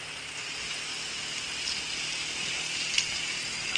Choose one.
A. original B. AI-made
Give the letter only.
A